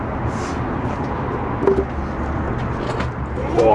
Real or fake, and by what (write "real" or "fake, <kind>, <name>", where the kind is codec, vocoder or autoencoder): real